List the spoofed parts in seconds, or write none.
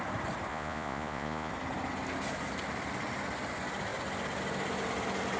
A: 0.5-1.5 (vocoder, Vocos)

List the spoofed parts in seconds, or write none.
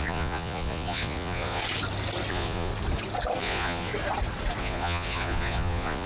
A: 0.0-1.6 (vocoder, Vocos); 2.3-2.7; 3.4-3.9; 4.6-6.1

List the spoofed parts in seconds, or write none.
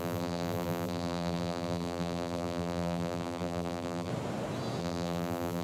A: 0.0-4.1 (vocoder, BigVGAN v2); 4.8-5.6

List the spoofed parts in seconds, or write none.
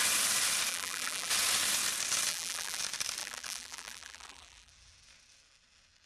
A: 0.7-1.3 (vocoder, BigVGAN v2); 2.3-2.8; 3.2-4.7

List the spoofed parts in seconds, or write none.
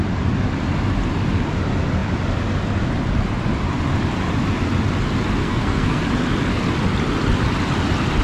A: 5.4-6.0 (codec, SNAC)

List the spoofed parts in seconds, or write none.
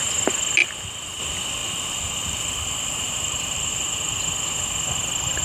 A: 0.6-1.2 (vocoder, BigVGAN v2); 1.6-3.7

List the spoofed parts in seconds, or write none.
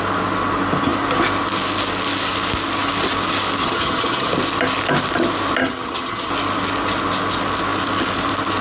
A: 3.6-4.3 (vocoder, HiFi-GAN); 5.6-6.3